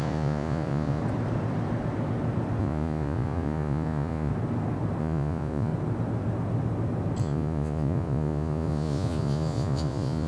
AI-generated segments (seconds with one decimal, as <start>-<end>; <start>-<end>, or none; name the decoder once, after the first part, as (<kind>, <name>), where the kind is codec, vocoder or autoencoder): 0.0-1.0 (vocoder, Vocos); 2.6-4.3; 5.0-5.7; 7.2-10.3